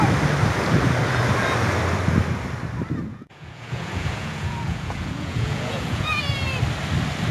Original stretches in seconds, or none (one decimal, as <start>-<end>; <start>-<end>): 0.0-3.1; 6.2-7.3